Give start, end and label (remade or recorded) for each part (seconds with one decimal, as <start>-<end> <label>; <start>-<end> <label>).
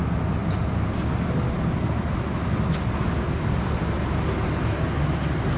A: 0.0-0.4 recorded; 0.4-3.8 remade; 3.8-5.6 recorded